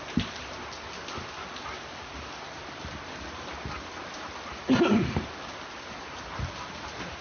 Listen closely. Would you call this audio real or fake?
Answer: real